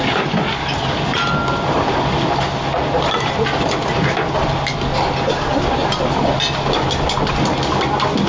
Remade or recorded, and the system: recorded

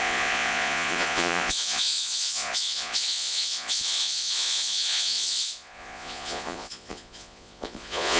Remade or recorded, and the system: remade, vocoder, Vocos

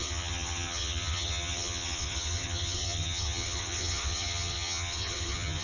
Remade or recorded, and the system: remade, vocoder, HiFi-GAN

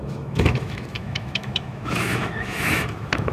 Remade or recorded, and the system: remade, autoencoder, DAC-VAE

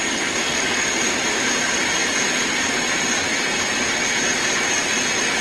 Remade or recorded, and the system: recorded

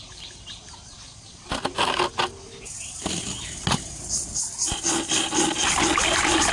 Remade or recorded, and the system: recorded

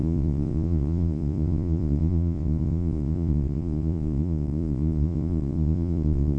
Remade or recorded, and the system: remade, vocoder, Vocos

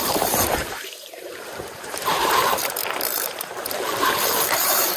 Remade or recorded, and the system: remade, vocoder, BigVGAN v2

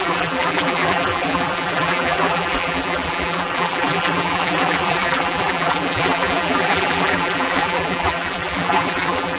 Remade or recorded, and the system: remade, vocoder, BigVGAN v2